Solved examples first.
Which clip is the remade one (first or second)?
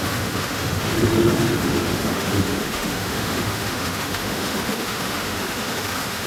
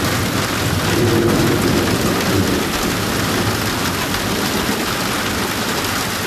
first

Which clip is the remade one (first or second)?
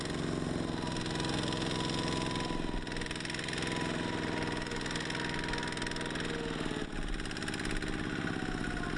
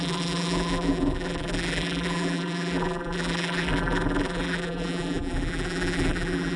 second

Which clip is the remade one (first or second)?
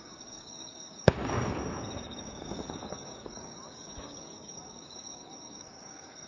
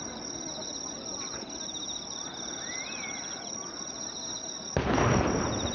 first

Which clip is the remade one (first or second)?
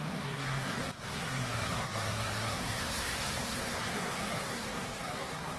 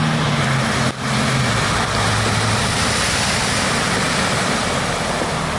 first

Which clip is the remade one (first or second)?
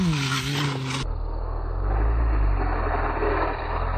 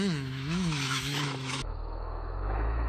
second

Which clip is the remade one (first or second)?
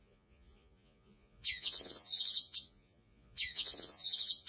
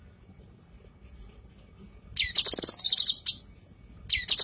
first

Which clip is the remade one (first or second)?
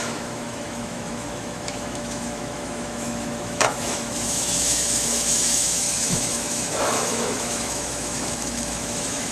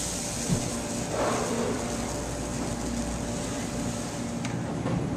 first